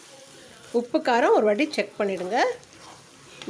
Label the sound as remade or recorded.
remade